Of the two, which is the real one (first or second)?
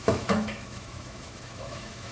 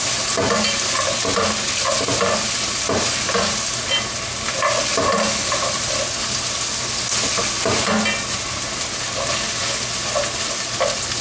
second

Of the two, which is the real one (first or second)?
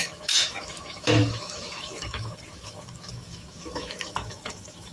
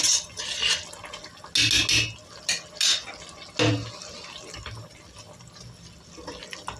second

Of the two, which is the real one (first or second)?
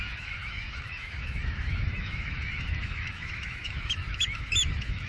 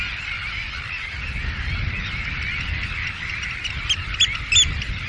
second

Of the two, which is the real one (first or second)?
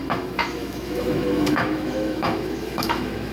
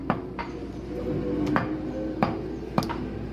second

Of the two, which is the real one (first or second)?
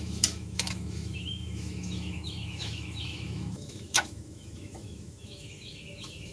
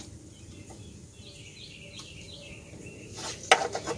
second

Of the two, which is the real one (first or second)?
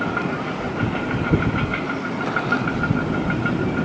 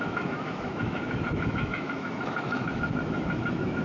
first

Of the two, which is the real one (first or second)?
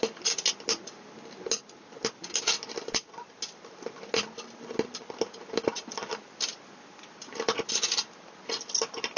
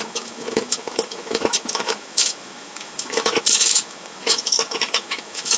first